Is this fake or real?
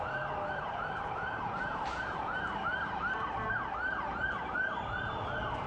fake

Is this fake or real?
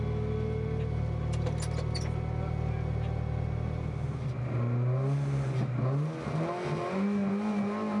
real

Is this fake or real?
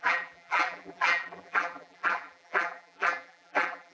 fake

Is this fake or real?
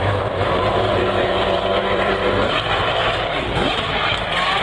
fake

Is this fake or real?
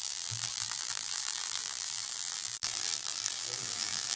fake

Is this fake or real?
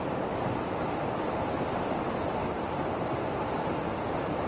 fake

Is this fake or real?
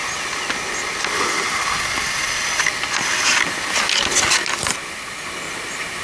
real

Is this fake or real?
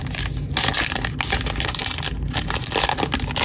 real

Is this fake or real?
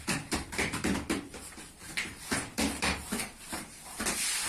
fake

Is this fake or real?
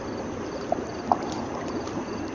real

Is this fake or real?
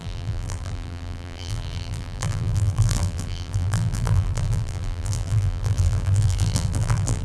fake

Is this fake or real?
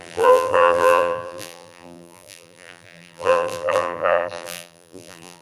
fake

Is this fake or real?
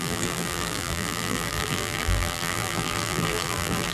fake